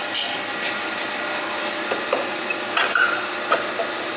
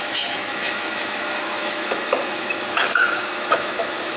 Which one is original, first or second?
first